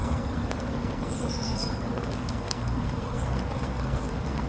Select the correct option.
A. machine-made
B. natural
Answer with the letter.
A